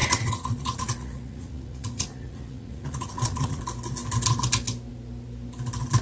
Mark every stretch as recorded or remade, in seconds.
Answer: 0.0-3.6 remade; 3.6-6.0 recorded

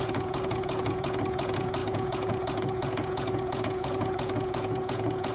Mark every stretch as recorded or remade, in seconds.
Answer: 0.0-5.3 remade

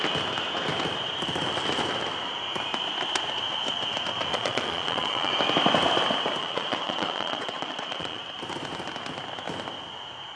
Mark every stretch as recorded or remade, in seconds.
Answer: 0.0-4.3 recorded; 4.3-5.3 remade; 5.3-6.4 recorded; 6.4-8.2 remade; 8.2-10.4 recorded

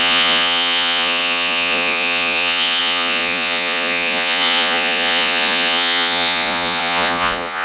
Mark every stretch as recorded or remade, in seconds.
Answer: 0.0-7.6 remade

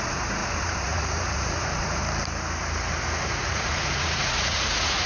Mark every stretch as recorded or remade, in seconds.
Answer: 0.0-2.0 remade; 2.0-3.3 recorded; 3.3-5.1 remade

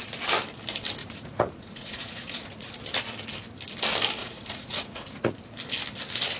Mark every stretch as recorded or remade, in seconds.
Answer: 0.0-1.0 recorded; 1.0-2.8 remade; 2.8-4.2 recorded; 4.2-5.3 remade; 5.3-6.4 recorded

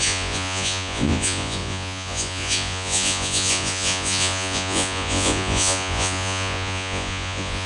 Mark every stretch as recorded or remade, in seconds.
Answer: 0.0-7.7 remade

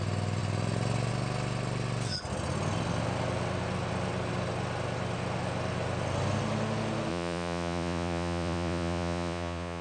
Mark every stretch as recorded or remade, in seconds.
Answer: 0.0-7.1 recorded; 7.1-9.8 remade